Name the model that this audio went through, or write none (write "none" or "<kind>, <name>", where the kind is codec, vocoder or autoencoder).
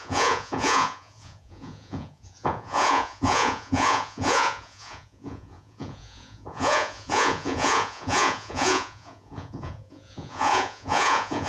vocoder, Vocos